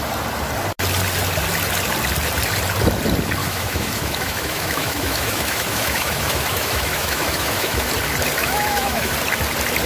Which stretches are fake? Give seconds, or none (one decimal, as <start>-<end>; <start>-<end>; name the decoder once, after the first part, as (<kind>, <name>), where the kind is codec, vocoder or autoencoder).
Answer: 3.4-7.9 (autoencoder, DAC-VAE); 8.4-9.1